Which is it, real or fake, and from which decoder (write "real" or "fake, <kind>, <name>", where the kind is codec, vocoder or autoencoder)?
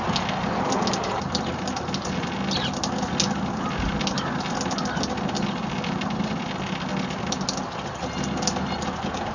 real